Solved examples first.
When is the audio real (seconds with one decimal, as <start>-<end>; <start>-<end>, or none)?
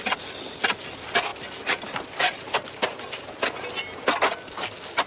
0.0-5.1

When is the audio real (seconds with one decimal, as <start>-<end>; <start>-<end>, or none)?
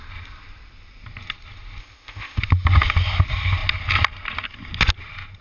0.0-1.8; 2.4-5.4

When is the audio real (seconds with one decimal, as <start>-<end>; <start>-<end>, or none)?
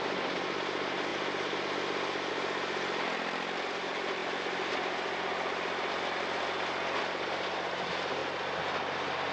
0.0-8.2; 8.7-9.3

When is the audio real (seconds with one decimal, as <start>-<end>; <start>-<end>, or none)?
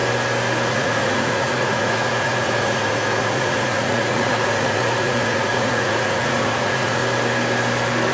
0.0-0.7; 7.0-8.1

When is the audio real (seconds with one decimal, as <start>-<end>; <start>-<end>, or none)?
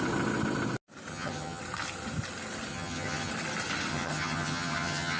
0.0-1.1; 1.6-2.7; 3.3-3.9